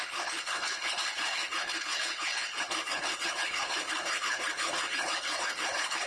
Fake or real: fake